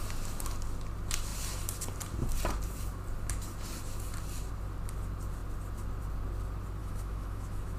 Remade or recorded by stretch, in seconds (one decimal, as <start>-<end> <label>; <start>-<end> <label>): 0.0-6.8 recorded; 6.8-7.8 remade